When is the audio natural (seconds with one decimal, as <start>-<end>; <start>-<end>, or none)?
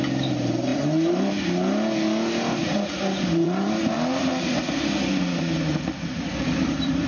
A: 0.0-0.7; 1.3-2.6